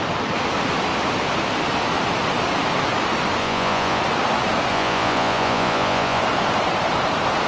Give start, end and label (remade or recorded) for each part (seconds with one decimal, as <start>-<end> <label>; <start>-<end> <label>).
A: 0.0-3.4 recorded; 3.4-4.0 remade; 4.0-4.7 recorded; 4.7-6.2 remade; 6.2-7.5 recorded